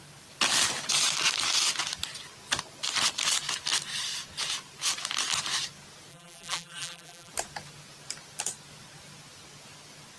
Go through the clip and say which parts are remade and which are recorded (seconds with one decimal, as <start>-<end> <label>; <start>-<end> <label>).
0.0-6.1 recorded; 6.1-7.3 remade; 7.3-10.2 recorded